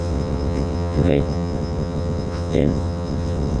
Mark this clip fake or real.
fake